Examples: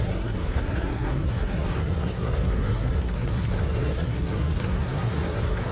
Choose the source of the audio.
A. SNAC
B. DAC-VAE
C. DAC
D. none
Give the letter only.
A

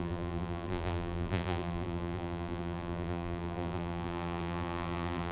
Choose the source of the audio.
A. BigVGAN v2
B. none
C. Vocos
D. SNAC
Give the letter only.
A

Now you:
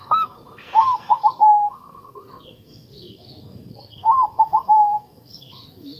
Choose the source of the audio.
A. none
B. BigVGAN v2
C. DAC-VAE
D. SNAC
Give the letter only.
D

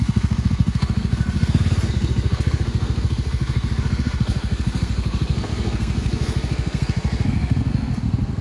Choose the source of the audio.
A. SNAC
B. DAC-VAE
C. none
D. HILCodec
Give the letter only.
A